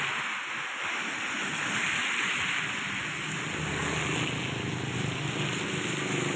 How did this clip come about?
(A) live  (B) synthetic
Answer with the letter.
A